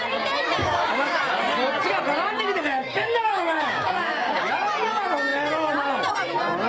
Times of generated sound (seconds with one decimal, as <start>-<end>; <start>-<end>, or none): 0.6-1.2; 2.8-4.5